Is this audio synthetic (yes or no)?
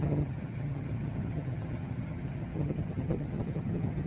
yes